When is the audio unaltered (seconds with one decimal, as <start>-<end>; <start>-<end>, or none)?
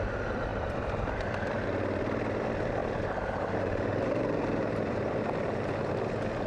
0.0-2.8; 5.2-6.5